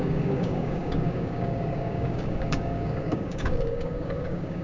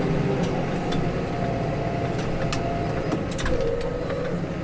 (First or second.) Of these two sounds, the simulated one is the first